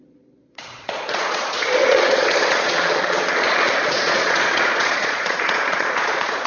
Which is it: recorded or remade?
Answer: remade